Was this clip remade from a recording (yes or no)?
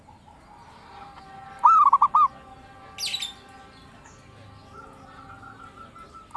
no